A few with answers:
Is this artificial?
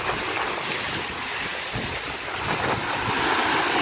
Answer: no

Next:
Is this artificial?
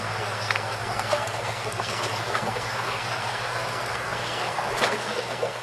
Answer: yes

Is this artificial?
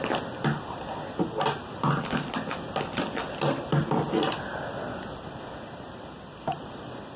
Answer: no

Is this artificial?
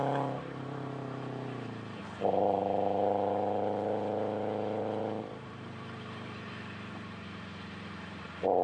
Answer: yes